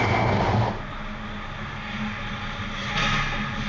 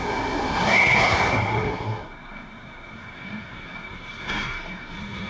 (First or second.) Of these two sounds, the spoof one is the second